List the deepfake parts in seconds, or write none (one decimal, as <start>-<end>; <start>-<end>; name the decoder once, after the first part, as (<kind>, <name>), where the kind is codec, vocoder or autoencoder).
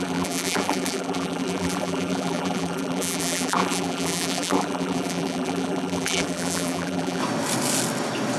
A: 0.0-7.2 (vocoder, BigVGAN v2)